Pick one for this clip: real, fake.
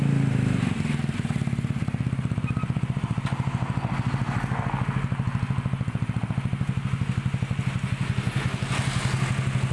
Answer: real